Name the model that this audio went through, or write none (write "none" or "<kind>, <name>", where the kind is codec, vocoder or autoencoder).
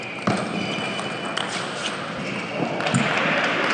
none